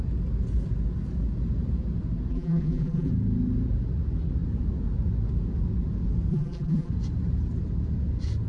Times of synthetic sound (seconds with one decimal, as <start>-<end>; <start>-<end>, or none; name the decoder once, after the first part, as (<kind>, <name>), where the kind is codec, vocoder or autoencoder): 2.3-3.1 (vocoder, BigVGAN v2); 6.3-6.9